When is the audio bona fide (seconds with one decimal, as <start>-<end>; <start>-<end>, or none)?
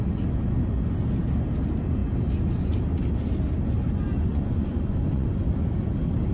0.0-4.3; 5.3-6.3